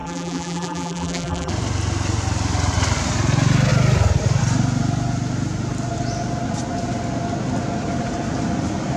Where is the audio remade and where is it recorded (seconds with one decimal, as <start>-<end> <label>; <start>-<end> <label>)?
0.0-1.5 remade; 1.5-9.0 recorded